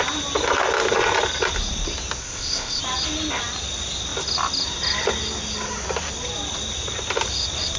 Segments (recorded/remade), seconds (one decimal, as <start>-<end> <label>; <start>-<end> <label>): 0.0-2.2 recorded; 2.2-2.8 remade; 2.8-7.8 recorded